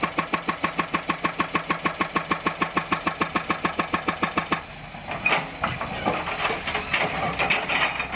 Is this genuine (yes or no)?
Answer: yes